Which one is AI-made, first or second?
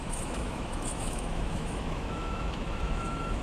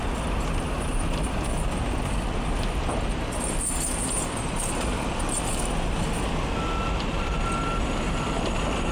first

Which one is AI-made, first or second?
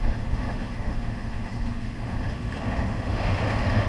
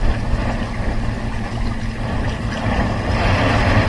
first